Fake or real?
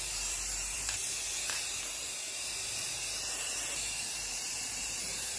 fake